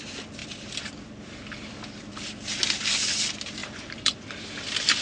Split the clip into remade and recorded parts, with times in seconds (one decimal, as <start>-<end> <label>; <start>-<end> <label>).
0.0-3.6 recorded; 3.6-4.2 remade; 4.2-5.0 recorded